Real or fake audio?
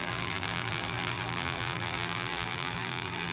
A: fake